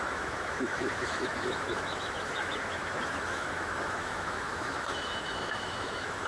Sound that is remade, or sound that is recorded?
remade